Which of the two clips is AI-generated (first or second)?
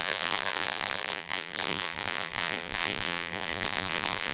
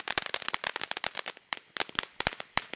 first